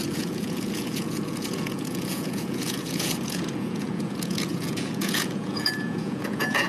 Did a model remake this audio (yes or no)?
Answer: yes